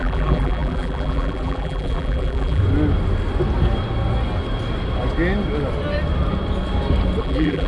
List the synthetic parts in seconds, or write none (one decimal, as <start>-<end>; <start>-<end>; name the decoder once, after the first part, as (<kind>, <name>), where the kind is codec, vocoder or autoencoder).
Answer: 0.0-2.6 (vocoder, BigVGAN v2); 7.2-7.7